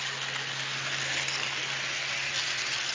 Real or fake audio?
real